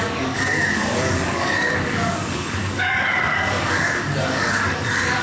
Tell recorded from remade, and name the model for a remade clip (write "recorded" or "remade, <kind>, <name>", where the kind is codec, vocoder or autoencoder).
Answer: remade, codec, DAC